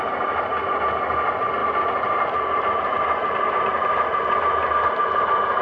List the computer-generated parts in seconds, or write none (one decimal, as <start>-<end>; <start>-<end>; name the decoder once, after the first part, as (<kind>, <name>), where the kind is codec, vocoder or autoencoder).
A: 1.6-4.7 (vocoder, BigVGAN v2)